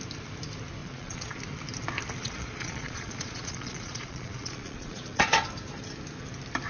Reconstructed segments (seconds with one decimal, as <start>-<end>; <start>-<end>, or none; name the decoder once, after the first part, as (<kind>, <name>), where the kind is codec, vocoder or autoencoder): 0.8-1.4 (vocoder, Vocos); 2.2-5.2